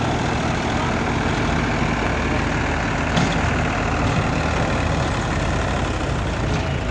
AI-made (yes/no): no